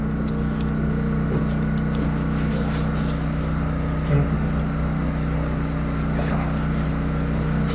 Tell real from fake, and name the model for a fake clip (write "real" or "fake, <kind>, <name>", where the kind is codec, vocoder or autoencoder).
real